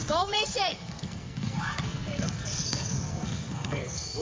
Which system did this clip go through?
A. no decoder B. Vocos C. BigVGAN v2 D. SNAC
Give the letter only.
D